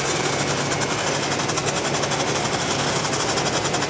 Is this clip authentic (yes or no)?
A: yes